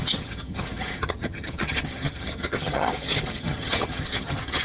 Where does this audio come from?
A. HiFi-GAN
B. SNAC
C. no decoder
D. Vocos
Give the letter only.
A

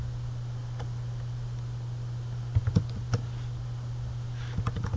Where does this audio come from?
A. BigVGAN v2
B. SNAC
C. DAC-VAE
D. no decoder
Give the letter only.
D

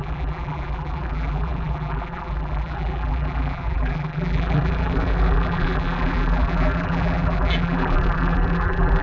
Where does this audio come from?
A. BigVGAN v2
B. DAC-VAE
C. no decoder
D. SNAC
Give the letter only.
A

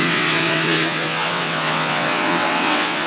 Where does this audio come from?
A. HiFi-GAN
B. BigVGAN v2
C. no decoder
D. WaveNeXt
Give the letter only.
D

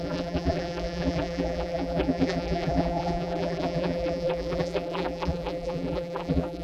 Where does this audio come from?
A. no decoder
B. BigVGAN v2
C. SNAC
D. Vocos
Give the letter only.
B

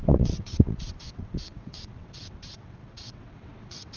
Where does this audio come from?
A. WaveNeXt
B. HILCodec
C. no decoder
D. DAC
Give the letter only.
A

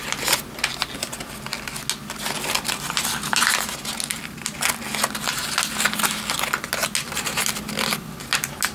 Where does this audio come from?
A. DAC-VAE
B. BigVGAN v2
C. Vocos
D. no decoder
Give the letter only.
D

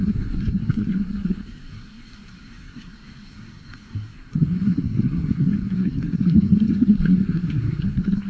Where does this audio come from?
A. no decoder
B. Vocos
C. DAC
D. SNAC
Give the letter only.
D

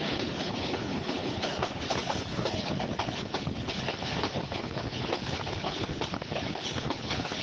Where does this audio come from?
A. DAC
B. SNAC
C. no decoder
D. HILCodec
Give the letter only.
D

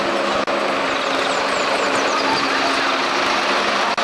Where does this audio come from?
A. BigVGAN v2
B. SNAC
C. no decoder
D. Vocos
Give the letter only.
C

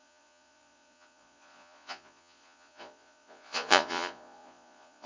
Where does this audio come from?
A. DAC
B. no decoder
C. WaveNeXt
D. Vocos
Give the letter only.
D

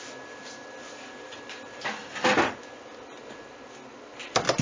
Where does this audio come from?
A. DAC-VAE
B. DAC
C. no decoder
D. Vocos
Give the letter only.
C